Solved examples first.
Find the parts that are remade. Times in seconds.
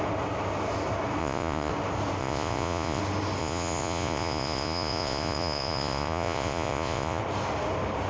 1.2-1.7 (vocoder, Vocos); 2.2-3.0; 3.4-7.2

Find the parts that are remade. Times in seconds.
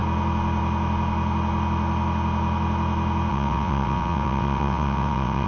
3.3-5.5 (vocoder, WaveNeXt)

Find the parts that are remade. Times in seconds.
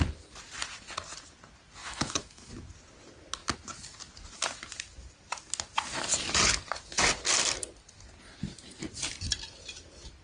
1.8-2.5 (autoencoder, DAC-VAE)